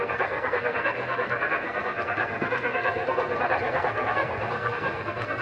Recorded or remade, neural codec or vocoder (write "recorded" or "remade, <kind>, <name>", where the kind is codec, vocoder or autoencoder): remade, codec, SNAC